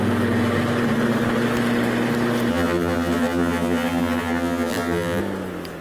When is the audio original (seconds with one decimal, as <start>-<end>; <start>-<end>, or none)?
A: 0.0-2.5; 5.2-5.8